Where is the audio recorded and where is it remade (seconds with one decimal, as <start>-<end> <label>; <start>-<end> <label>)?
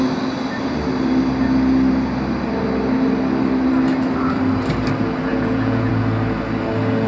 0.0-5.3 recorded; 5.3-5.9 remade; 5.9-7.1 recorded